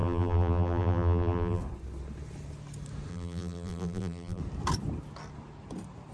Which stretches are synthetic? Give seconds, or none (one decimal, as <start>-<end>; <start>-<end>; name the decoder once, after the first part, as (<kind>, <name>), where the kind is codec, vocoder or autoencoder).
0.0-1.6 (vocoder, BigVGAN v2); 3.1-4.4